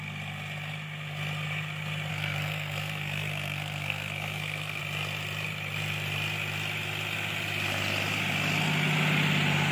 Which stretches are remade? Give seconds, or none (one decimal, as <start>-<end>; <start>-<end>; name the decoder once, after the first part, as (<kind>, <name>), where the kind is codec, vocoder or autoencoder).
2.1-4.8 (codec, SNAC)